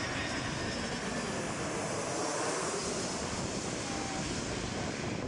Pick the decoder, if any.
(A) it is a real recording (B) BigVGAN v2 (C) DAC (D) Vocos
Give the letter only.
A